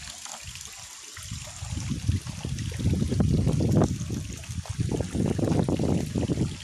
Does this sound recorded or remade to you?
recorded